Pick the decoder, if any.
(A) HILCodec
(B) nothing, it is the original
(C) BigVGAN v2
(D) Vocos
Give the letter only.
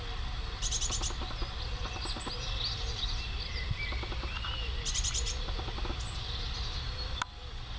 B